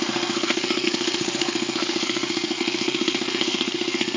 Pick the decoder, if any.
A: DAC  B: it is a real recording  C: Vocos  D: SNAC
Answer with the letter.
D